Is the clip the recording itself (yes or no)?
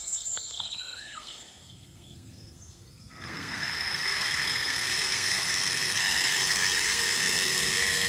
no